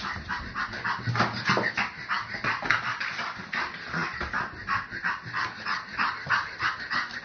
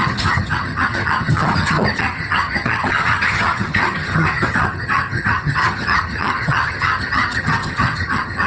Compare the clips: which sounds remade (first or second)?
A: second